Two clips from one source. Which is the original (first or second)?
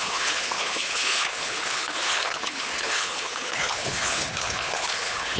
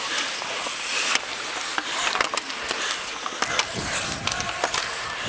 second